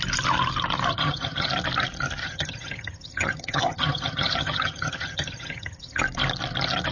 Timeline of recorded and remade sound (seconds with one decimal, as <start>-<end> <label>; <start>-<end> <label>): 0.0-0.9 recorded; 0.9-1.5 remade; 1.5-2.2 recorded; 2.2-6.0 remade; 6.0-6.9 recorded